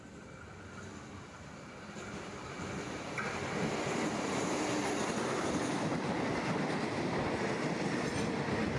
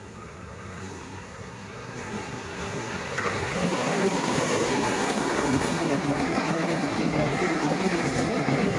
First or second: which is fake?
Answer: second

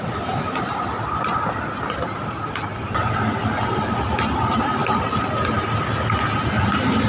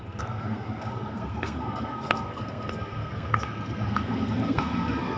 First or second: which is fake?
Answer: second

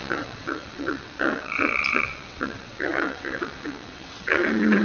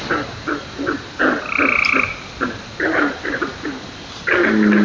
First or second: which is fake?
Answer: first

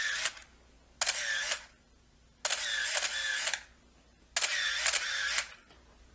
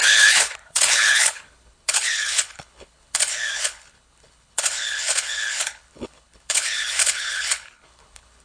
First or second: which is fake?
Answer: second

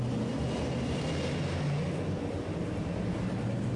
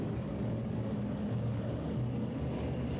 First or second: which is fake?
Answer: second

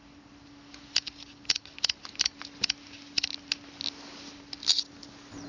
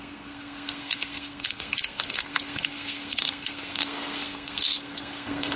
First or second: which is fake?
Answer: second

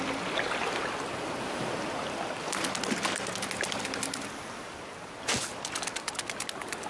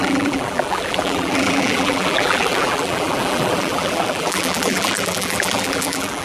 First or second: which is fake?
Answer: second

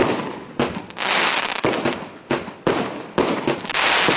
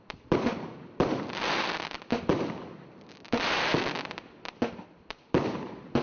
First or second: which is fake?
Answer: second